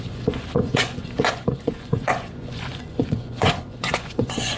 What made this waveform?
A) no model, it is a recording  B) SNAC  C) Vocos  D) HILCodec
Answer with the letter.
C